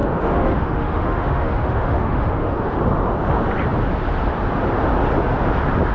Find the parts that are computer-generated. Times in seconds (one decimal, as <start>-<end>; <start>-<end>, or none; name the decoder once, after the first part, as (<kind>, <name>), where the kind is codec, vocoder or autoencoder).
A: 0.0-2.8 (autoencoder, DAC-VAE)